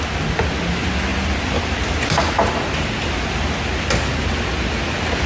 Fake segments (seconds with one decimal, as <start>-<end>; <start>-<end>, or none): none